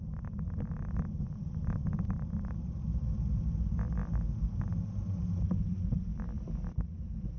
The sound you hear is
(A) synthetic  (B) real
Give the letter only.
B